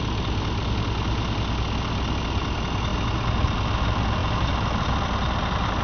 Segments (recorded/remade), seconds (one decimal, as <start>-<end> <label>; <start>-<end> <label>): 0.0-5.8 recorded